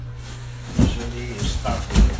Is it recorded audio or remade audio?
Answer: recorded